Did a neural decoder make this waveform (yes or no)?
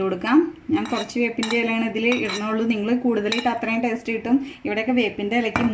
no